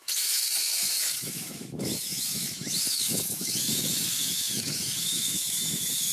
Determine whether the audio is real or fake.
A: fake